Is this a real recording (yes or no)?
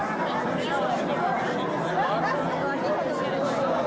yes